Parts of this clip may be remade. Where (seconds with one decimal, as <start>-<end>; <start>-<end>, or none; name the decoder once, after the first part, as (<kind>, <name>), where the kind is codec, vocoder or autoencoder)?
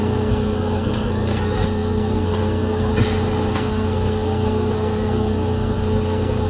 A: 0.0-2.9 (codec, SNAC); 3.5-6.5